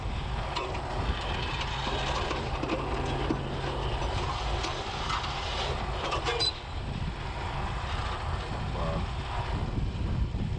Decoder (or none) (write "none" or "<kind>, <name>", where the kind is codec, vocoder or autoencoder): none